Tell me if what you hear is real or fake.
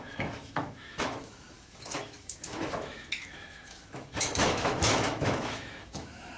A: fake